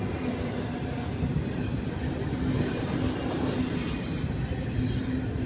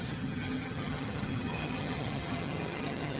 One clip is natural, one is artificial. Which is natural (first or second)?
first